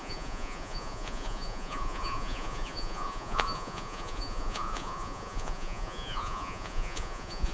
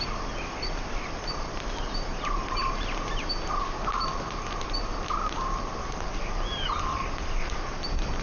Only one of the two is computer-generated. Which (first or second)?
first